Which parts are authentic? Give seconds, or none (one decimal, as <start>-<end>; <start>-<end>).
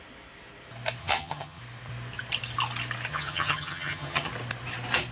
0.0-1.0; 1.6-3.1; 4.3-5.1